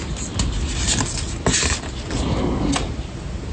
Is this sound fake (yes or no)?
no